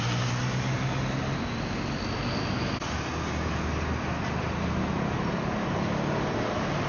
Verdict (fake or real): real